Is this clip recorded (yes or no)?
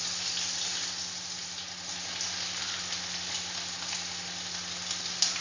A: yes